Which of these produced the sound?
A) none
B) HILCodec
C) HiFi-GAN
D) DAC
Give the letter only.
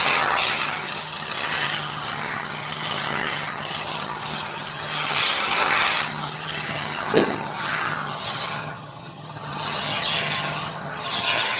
C